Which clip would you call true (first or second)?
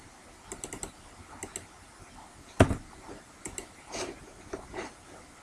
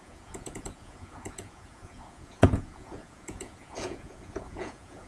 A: first